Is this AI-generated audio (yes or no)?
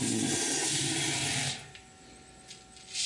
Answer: no